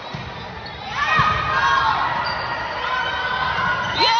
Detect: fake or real real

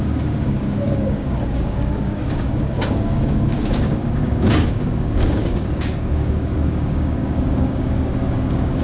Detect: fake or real fake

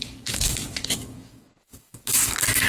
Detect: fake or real fake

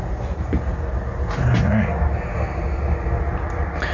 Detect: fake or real real